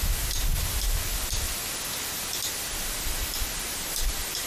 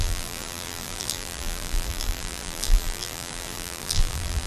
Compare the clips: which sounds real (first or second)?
first